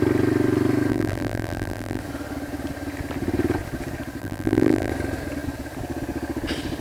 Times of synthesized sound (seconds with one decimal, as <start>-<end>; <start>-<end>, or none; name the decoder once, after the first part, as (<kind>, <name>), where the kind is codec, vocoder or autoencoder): 0.9-2.0 (vocoder, BigVGAN v2); 4.2-4.9